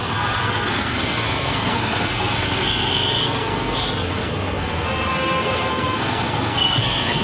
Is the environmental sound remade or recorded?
remade